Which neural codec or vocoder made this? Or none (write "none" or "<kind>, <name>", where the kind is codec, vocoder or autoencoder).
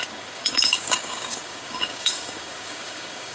codec, DAC